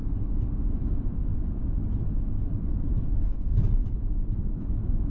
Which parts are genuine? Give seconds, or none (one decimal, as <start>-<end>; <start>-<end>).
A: 0.0-0.6; 1.3-4.4